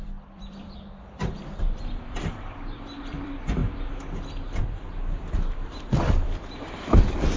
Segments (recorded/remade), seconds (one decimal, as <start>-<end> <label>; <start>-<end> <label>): 0.0-3.6 remade; 3.6-4.6 recorded; 4.6-7.4 remade